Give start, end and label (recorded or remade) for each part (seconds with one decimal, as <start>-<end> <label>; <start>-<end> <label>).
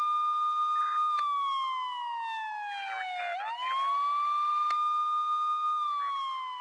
0.0-6.6 recorded